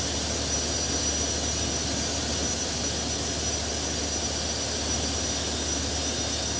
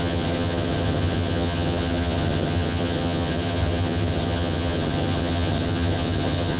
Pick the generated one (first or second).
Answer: second